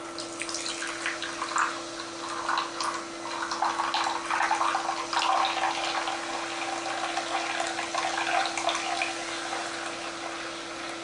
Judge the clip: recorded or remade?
recorded